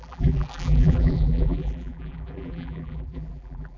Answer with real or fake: fake